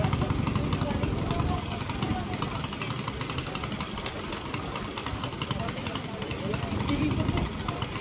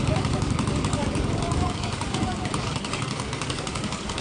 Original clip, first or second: first